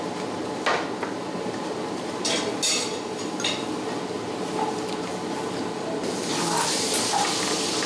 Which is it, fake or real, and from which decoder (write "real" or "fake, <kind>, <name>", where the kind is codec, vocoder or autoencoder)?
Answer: real